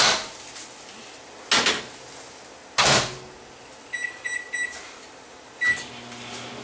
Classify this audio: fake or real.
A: real